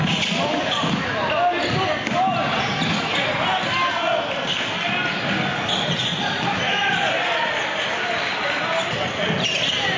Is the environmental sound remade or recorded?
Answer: recorded